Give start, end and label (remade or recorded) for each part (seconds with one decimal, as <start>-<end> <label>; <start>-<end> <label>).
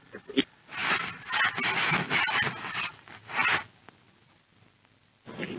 0.0-5.6 recorded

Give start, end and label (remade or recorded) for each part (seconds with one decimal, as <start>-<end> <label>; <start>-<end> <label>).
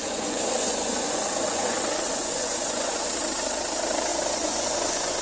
0.0-3.1 remade; 3.1-4.1 recorded; 4.1-5.2 remade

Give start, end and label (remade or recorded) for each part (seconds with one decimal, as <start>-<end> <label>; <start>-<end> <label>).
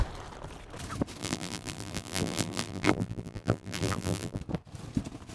0.0-1.2 recorded; 1.2-4.4 remade; 4.4-5.3 recorded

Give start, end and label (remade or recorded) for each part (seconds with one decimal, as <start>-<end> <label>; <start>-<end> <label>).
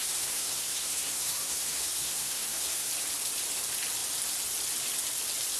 0.0-2.9 remade; 2.9-5.6 recorded